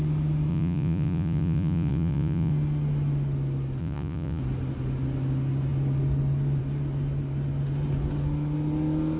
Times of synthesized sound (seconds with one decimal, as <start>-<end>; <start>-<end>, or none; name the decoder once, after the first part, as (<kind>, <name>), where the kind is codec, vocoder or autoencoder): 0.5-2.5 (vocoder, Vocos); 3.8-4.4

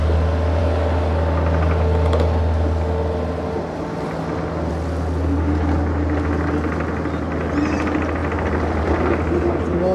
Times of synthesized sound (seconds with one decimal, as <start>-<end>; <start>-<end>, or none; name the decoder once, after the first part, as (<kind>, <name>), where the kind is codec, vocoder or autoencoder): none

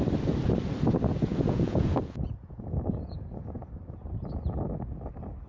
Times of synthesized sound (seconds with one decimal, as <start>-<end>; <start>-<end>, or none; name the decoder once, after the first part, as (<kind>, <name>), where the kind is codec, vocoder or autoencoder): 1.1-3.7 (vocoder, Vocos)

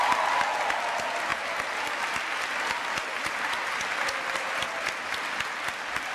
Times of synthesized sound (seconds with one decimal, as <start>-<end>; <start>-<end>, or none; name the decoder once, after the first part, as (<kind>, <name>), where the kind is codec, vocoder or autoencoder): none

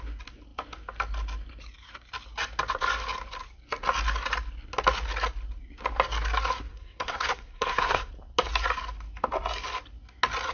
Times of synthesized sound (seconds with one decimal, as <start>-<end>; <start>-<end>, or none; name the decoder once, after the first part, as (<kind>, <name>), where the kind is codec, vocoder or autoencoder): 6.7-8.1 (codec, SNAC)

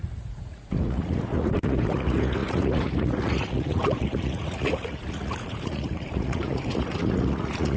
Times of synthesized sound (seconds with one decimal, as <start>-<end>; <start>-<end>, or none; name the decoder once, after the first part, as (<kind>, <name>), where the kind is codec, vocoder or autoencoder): 0.0-7.8 (vocoder, Vocos)

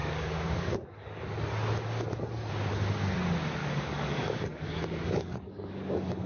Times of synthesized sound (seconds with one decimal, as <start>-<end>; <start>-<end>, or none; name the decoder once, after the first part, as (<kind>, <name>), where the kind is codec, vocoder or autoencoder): 0.0-1.2 (codec, DAC); 3.6-6.3

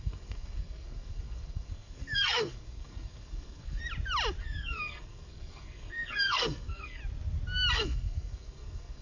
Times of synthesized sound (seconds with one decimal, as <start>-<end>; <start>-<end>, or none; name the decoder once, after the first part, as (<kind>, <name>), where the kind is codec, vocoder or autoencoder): 0.0-3.8 (codec, SNAC); 4.4-7.0; 7.7-9.0